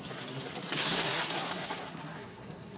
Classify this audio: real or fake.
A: fake